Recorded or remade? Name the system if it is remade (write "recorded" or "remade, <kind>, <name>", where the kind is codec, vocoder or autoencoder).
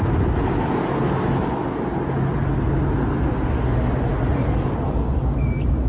recorded